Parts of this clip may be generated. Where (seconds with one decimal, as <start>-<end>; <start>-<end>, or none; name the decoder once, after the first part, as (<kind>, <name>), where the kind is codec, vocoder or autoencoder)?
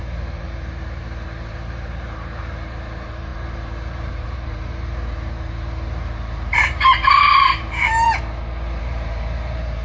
0.0-9.8 (vocoder, BigVGAN v2)